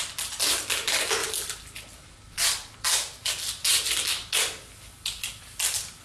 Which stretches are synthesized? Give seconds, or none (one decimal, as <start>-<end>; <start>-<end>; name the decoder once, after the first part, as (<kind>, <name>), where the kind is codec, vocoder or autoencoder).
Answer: none